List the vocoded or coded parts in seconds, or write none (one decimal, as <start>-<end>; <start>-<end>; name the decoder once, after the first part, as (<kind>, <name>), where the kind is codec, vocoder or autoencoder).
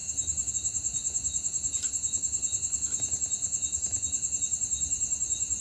0.0-0.5 (autoencoder, DAC-VAE)